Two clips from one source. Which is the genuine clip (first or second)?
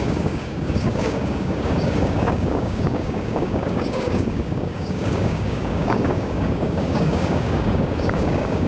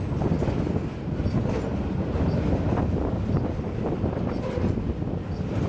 second